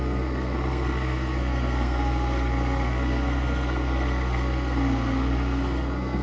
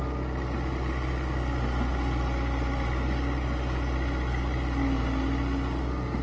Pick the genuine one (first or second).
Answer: second